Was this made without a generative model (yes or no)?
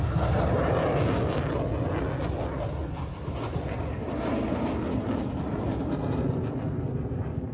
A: yes